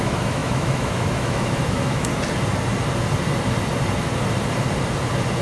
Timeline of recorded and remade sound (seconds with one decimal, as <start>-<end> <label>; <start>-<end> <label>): 0.0-2.1 remade; 2.1-5.4 recorded